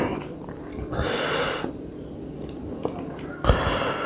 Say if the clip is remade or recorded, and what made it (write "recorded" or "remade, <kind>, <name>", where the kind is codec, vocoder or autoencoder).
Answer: recorded